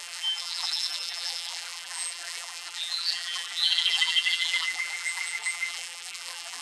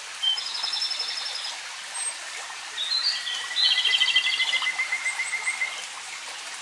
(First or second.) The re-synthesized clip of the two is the first